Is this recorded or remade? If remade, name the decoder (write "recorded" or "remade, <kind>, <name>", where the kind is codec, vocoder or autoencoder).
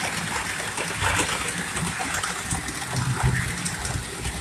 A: recorded